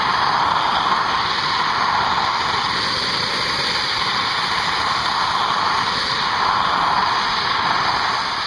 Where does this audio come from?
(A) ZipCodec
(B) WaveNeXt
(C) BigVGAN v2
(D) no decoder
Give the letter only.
D